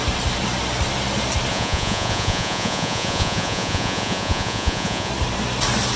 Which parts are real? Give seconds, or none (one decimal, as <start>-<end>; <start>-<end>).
0.0-1.5; 5.1-6.0